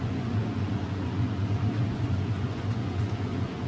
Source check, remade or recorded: remade